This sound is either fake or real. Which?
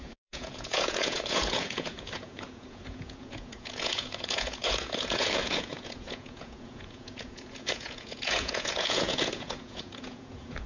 fake